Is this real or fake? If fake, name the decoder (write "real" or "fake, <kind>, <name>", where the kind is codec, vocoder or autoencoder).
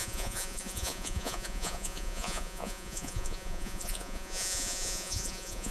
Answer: fake, vocoder, Vocos